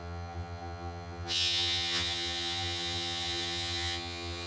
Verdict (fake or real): fake